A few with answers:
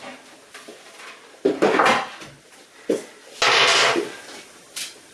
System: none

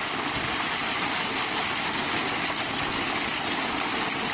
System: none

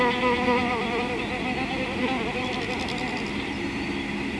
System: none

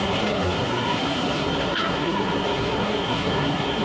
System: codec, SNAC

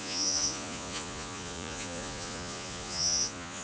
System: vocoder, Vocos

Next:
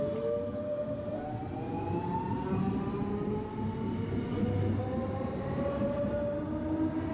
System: none